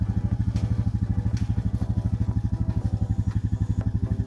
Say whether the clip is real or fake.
real